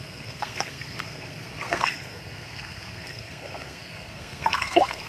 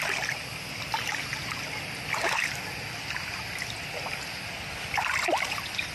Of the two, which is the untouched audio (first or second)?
second